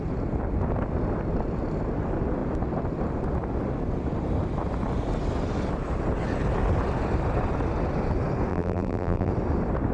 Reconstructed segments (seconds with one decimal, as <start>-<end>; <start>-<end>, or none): 8.5-9.3